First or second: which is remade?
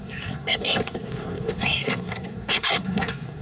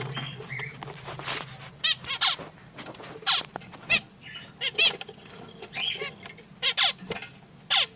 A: first